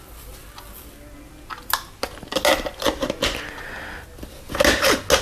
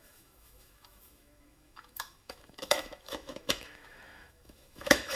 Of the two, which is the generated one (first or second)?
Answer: second